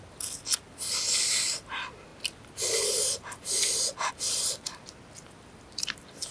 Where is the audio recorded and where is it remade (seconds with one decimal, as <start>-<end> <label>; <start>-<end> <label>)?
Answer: 0.0-6.3 recorded